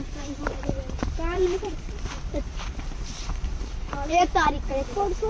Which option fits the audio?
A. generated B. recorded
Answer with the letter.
A